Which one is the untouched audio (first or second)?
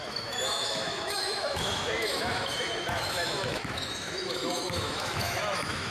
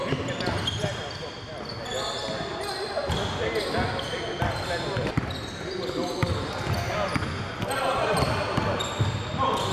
second